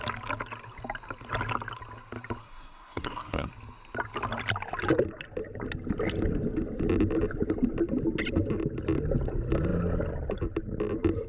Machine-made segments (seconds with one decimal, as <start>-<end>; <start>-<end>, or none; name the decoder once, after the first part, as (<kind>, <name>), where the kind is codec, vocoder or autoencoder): 2.4-3.5 (codec, SNAC)